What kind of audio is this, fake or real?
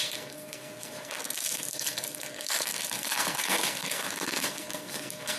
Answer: fake